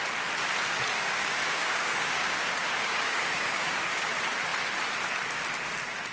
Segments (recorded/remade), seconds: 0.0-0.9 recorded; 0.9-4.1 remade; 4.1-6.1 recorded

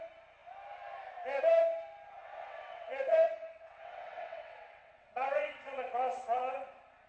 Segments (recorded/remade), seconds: 0.0-2.2 recorded; 2.2-6.5 remade; 6.5-7.1 recorded

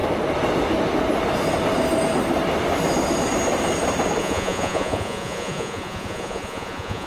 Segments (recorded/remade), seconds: 0.0-4.2 recorded; 4.2-7.1 remade

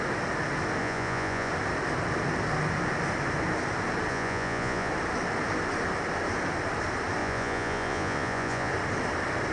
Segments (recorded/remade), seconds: 0.0-0.8 recorded; 0.8-1.5 remade; 1.5-4.1 recorded; 4.1-4.9 remade; 4.9-7.2 recorded; 7.2-8.7 remade; 8.7-9.5 recorded